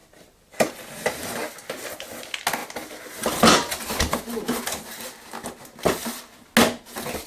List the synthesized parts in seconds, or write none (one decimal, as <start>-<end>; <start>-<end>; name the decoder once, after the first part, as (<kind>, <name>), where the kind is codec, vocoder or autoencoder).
0.0-0.7 (vocoder, BigVGAN v2)